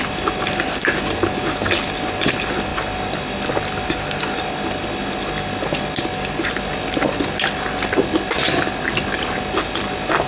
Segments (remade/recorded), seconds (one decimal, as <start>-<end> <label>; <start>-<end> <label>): 0.0-10.3 recorded